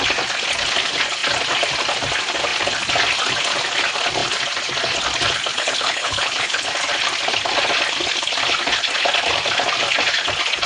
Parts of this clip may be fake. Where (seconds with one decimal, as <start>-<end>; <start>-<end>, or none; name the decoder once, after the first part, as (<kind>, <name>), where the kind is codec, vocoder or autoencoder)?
5.5-6.7 (codec, HILCodec)